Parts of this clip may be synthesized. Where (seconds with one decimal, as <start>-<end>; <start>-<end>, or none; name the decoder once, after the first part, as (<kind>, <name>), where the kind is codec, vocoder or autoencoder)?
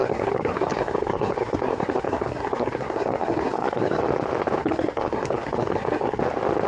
0.0-4.0 (codec, SNAC); 4.6-6.2